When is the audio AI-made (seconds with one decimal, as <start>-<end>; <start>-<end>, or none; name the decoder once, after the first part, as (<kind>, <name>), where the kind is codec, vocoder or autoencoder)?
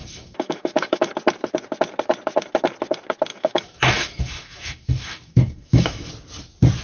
0.0-1.1 (autoencoder, DAC-VAE); 3.3-6.1